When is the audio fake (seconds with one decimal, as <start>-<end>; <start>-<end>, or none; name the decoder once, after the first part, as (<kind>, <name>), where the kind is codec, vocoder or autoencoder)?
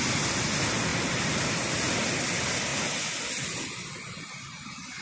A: none